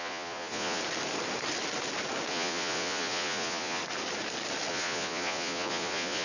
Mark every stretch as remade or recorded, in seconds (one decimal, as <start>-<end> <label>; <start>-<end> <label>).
0.0-0.8 remade; 0.8-2.3 recorded; 2.3-3.8 remade; 3.8-4.7 recorded; 4.7-6.2 remade